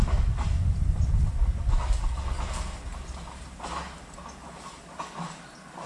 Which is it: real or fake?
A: real